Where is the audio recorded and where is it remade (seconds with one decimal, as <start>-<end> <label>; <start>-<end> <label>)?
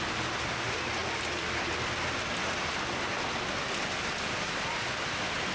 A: 0.0-5.5 recorded